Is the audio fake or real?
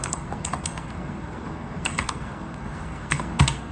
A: fake